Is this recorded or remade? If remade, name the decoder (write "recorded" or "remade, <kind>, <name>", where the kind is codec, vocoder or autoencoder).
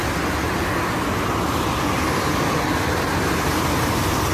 recorded